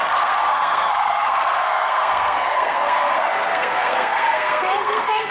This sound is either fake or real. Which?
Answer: fake